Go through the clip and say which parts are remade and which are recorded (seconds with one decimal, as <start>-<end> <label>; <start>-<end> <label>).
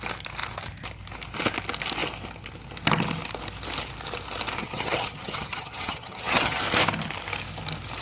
0.0-4.6 recorded; 4.6-6.6 remade; 6.6-8.0 recorded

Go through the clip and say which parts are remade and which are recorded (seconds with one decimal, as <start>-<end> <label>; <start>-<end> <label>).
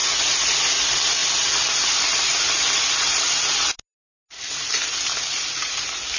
0.0-6.2 recorded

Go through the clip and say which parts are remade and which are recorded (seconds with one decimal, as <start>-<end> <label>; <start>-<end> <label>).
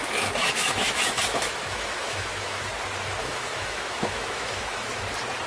0.0-2.7 remade; 2.7-3.2 recorded; 3.2-5.0 remade; 5.0-5.5 recorded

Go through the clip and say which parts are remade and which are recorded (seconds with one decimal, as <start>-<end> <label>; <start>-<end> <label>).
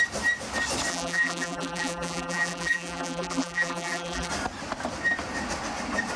0.0-0.9 recorded; 0.9-4.3 remade; 4.3-6.2 recorded